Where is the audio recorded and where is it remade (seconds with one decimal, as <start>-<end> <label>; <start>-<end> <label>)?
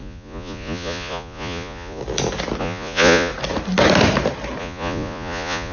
0.0-2.0 remade; 2.0-2.6 recorded; 2.6-3.3 remade; 3.3-4.6 recorded; 4.6-5.7 remade